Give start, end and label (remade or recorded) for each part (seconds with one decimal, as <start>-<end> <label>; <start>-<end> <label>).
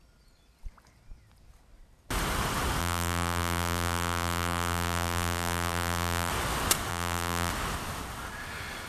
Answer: 0.0-2.8 recorded; 2.8-6.3 remade; 6.3-6.9 recorded; 6.9-7.5 remade; 7.5-8.9 recorded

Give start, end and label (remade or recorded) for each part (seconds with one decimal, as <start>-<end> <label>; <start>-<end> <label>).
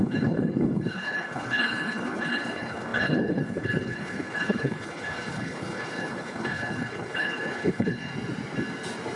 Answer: 0.0-8.1 remade; 8.1-9.2 recorded